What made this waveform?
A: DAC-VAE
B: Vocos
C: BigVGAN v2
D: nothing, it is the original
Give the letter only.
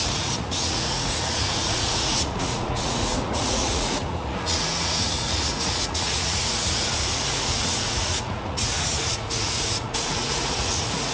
B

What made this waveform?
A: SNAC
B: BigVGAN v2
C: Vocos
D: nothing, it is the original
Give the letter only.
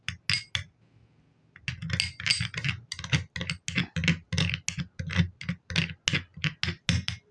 D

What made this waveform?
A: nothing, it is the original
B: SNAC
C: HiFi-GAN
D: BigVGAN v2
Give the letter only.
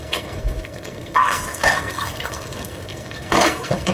B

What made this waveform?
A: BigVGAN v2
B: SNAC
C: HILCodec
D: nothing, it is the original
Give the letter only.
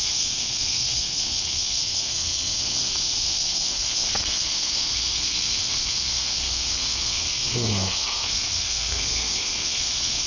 B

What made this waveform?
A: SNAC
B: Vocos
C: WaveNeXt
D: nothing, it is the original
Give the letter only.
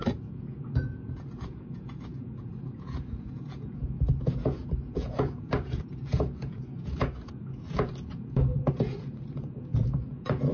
B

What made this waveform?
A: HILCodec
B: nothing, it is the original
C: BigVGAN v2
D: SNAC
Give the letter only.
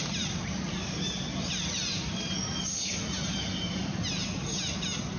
B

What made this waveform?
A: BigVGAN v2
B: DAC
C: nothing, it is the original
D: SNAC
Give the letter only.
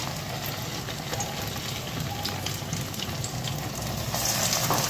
C